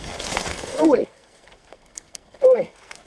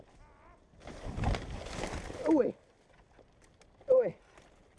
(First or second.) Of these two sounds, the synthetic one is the first